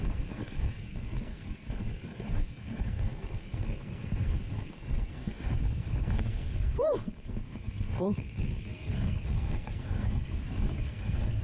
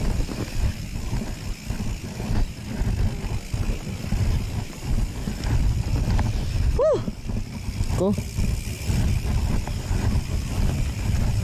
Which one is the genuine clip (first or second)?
second